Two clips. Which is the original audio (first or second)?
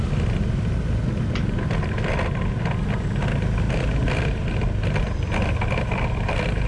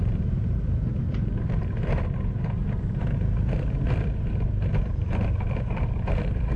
first